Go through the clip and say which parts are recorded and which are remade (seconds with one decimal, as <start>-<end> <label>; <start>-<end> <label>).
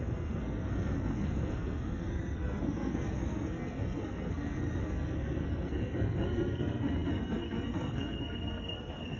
0.0-9.2 remade